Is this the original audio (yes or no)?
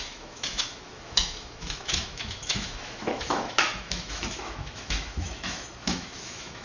no